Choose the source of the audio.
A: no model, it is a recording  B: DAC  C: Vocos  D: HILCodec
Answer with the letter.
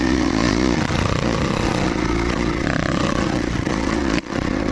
C